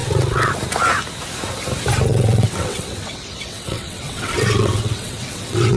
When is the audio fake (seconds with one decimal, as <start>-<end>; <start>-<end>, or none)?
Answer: 0.0-0.5; 2.1-5.8